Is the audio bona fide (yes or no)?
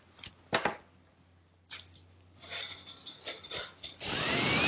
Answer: yes